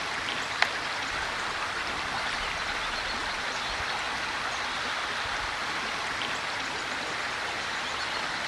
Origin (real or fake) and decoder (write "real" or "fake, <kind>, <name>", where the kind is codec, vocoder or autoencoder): real